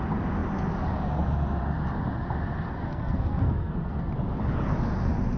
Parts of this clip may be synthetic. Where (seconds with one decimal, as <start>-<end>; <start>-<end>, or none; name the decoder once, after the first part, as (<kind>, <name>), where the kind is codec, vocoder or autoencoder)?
2.8-4.1 (codec, SNAC)